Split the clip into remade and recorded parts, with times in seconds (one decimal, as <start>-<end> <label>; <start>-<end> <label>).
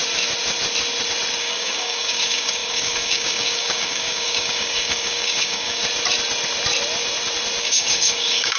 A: 0.0-1.4 recorded; 1.4-5.8 remade; 5.8-7.6 recorded; 7.6-8.6 remade